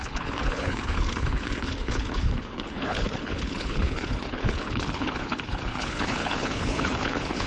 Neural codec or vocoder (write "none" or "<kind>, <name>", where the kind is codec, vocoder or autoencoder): codec, HILCodec